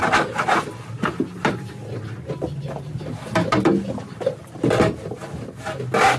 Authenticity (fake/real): real